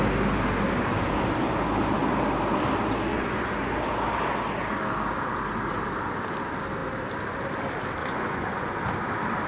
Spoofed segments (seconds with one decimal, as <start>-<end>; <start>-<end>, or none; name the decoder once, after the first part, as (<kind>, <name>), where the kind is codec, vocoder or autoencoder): 3.1-3.7 (vocoder, Vocos); 8.0-8.7

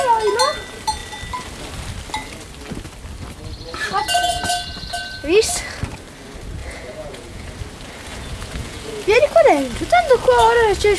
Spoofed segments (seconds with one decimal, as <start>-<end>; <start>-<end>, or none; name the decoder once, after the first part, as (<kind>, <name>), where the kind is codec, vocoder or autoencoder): 6.6-7.5 (vocoder, Vocos); 8.1-9.2

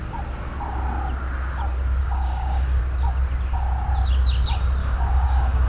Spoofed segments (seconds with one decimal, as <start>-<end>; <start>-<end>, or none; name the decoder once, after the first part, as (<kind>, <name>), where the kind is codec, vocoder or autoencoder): 2.0-2.8 (codec, DAC); 4.8-5.7

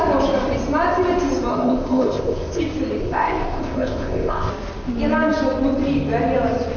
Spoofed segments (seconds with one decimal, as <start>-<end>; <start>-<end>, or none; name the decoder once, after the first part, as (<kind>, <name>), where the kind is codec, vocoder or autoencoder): 1.5-2.6 (codec, ZipCodec); 3.0-4.5